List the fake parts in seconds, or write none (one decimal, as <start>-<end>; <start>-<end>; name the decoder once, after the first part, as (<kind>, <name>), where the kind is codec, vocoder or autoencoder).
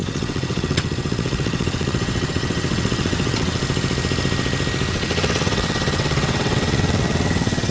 0.0-3.6 (vocoder, WaveNeXt); 4.9-7.7